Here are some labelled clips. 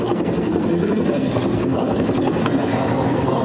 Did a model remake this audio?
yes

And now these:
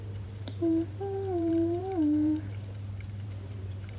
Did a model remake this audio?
yes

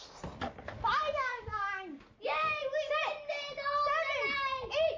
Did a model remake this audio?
no